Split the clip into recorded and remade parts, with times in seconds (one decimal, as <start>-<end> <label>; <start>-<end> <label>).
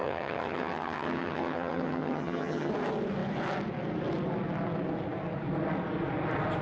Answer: 0.0-2.7 remade; 2.7-6.6 recorded